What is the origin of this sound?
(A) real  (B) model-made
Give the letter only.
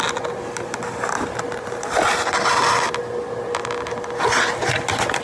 A